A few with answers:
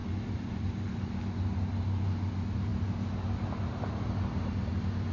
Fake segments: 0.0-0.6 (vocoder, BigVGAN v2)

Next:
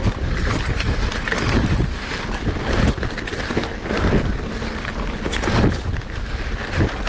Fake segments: 0.0-1.1 (vocoder, BigVGAN v2)